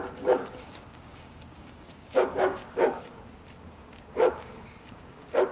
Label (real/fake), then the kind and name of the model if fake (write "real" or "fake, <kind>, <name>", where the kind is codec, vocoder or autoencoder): fake, codec, DAC